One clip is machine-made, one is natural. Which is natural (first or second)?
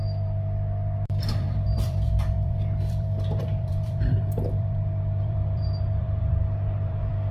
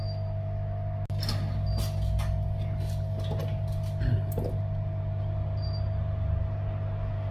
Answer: second